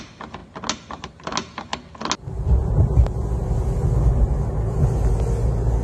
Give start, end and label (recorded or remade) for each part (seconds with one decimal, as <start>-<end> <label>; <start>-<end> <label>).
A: 0.0-5.8 recorded